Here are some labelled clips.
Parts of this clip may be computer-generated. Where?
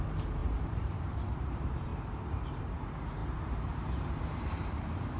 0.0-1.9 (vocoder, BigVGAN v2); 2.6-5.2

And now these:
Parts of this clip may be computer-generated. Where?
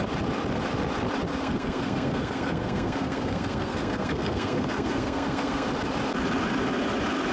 1.3-5.7 (codec, SNAC)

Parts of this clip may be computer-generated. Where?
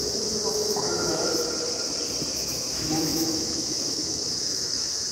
0.0-1.3 (autoencoder, DAC-VAE); 2.3-5.1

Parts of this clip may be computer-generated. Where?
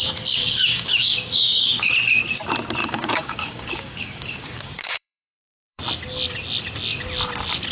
0.4-1.9 (codec, DAC); 2.8-5.8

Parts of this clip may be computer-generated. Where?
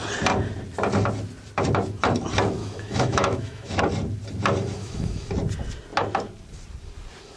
2.6-3.8 (autoencoder, DAC-VAE); 4.8-5.3